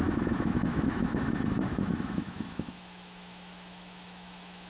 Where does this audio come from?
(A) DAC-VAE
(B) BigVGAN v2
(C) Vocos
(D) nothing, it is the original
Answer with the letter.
A